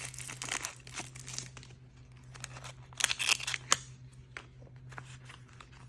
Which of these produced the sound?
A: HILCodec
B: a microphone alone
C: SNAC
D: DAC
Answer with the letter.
B